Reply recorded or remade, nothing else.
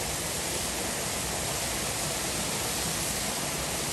recorded